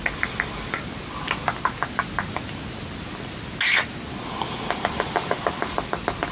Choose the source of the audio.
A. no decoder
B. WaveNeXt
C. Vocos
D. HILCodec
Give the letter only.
A